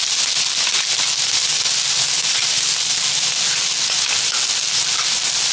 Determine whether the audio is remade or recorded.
recorded